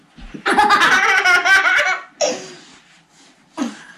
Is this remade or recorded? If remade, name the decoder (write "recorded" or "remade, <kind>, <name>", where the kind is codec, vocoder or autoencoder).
recorded